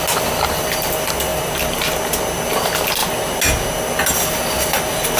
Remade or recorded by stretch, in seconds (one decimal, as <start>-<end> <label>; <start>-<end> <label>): 0.0-5.2 recorded